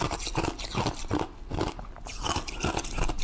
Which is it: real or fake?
real